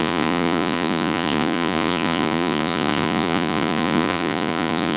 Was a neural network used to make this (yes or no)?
yes